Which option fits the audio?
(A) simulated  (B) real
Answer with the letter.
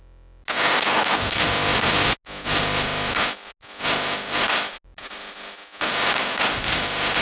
B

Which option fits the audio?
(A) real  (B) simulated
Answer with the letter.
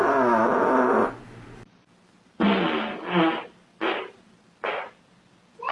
A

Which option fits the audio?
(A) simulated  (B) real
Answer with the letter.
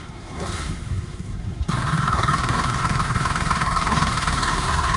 A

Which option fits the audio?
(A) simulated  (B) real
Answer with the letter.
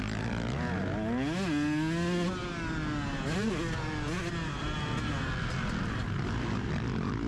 B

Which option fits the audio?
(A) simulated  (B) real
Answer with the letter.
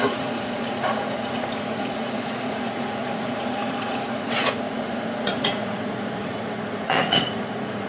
A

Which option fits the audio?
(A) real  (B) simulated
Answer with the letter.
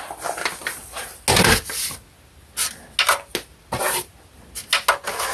A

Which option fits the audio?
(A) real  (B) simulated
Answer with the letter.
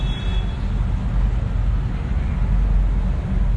A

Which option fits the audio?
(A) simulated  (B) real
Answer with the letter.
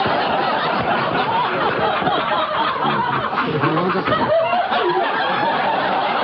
A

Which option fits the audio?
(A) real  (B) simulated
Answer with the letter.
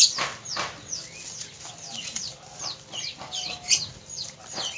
A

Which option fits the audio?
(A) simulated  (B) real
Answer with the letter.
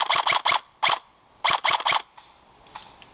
B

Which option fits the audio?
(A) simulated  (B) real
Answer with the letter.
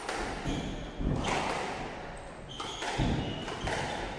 B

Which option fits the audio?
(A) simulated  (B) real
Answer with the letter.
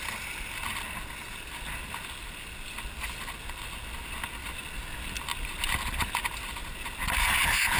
B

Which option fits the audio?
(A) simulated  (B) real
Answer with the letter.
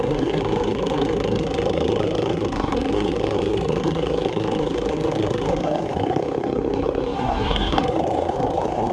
A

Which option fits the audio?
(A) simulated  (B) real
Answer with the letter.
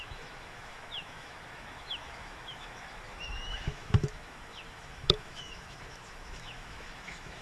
A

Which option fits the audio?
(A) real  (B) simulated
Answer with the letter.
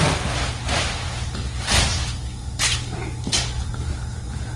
A